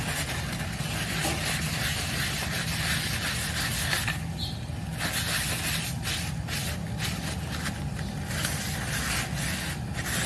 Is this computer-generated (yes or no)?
no